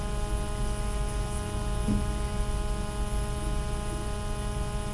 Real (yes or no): no